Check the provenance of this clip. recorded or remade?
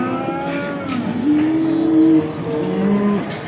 recorded